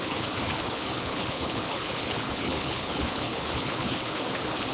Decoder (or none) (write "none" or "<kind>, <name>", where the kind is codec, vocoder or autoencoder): codec, HILCodec